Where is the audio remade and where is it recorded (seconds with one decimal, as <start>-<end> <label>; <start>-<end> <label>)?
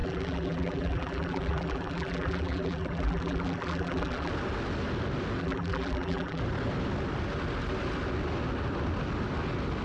0.0-4.3 remade; 4.3-5.4 recorded; 5.4-6.4 remade; 6.4-9.8 recorded